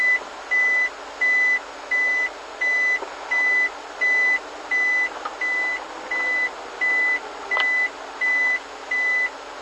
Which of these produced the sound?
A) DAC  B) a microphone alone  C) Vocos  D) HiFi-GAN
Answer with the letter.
B